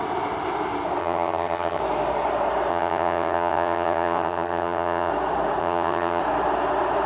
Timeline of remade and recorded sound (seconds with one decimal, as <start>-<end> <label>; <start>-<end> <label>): 0.0-1.0 recorded; 1.0-1.8 remade; 1.8-2.7 recorded; 2.7-5.1 remade; 5.1-5.6 recorded; 5.6-6.2 remade; 6.2-7.1 recorded